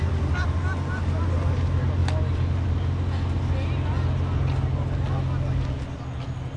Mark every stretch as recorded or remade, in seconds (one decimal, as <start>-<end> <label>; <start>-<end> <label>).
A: 0.0-6.6 recorded